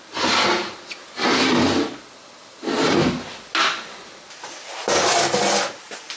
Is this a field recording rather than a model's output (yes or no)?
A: yes